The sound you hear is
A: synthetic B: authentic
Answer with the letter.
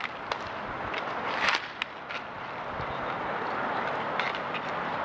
B